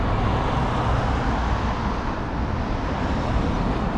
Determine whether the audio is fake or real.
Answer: real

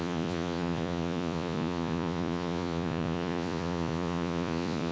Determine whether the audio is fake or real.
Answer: fake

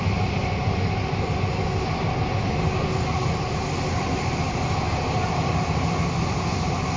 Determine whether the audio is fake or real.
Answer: real